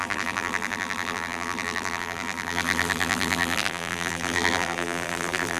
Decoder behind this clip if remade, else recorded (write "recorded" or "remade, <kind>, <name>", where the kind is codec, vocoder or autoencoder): remade, vocoder, BigVGAN v2